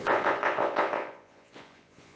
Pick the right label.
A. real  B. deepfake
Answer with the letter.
B